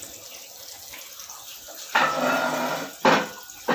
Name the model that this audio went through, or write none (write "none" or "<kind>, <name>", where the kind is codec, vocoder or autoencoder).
none